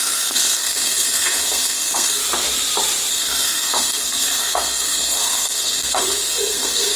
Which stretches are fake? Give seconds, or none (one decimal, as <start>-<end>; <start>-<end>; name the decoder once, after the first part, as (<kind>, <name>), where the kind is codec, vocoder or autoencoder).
0.0-2.2 (codec, SNAC); 3.1-7.0